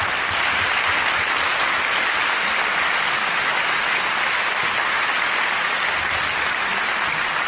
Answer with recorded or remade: recorded